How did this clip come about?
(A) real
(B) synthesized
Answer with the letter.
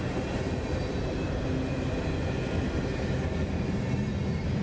A